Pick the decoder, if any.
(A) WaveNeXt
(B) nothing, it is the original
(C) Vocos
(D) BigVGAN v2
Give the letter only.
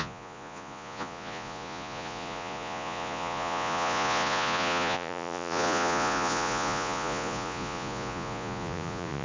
C